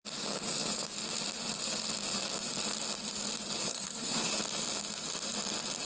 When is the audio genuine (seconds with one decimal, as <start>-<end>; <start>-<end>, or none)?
0.0-3.7; 4.4-5.9